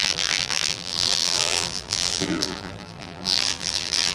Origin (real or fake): fake